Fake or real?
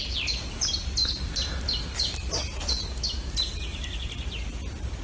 real